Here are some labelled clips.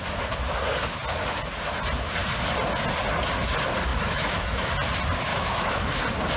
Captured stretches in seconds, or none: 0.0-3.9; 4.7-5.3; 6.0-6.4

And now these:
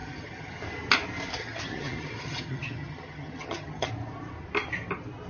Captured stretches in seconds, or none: 0.6-1.4; 3.9-5.3

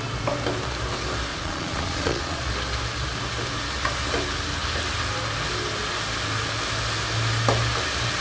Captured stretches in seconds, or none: 0.0-1.3; 2.5-8.2

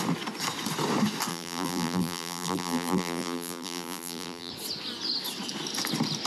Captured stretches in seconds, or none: 0.0-1.3; 4.5-6.3

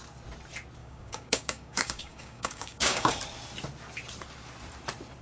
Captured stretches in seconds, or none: 0.0-0.8; 3.2-5.2

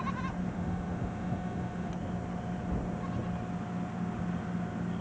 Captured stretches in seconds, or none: 0.0-0.4; 1.9-5.0

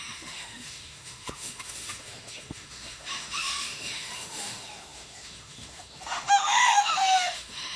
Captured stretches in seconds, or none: none

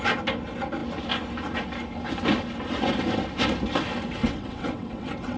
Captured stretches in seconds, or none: 0.0-4.2